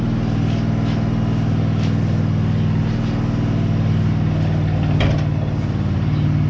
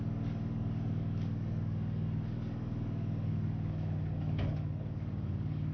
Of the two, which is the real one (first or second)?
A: first